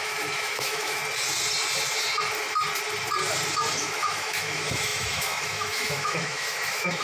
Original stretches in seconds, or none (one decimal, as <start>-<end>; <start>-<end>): 1.0-3.8